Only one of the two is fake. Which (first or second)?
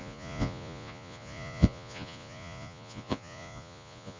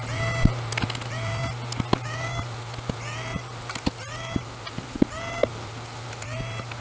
first